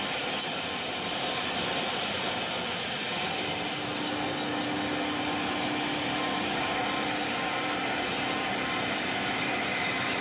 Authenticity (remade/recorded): recorded